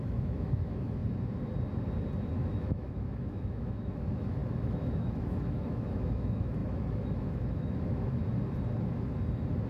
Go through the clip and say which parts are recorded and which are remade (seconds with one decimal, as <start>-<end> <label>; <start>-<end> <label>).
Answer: 0.0-1.0 remade; 1.0-2.3 recorded; 2.3-8.2 remade; 8.2-9.7 recorded